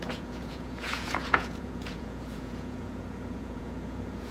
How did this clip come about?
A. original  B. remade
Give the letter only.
B